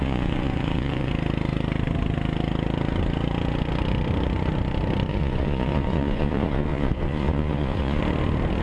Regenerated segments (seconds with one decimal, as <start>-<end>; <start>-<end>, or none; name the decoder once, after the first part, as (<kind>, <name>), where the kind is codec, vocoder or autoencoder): 0.0-1.1 (vocoder, Vocos); 5.1-8.0